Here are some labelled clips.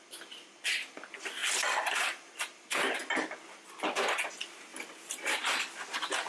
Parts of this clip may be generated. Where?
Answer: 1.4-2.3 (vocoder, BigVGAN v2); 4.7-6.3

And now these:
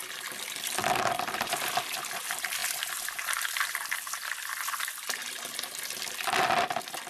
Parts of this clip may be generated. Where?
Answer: 0.0-0.8 (vocoder, BigVGAN v2); 2.6-4.8; 5.2-6.1

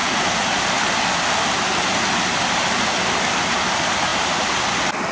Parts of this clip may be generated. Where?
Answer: none

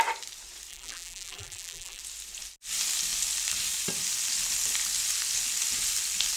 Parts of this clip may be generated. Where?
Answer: 0.7-2.0 (vocoder, BigVGAN v2)

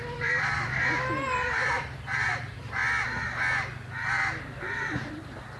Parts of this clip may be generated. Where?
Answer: 0.0-2.8 (vocoder, BigVGAN v2); 4.6-5.6